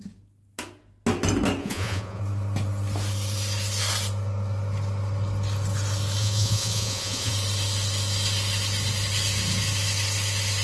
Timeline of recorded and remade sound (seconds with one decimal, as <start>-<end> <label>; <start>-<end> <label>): 0.0-1.6 recorded; 1.6-2.2 remade; 2.2-6.2 recorded; 6.2-7.3 remade; 7.3-10.6 recorded